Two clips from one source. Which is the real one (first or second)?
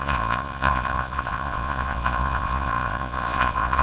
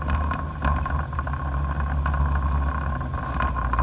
second